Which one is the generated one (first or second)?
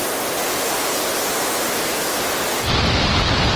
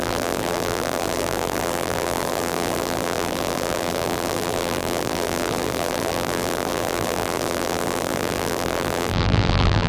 second